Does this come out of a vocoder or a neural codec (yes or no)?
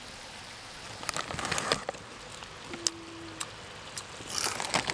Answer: no